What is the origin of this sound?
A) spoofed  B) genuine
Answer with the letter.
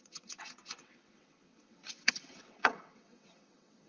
A